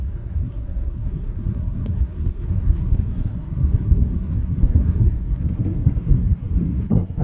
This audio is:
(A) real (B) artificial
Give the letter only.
B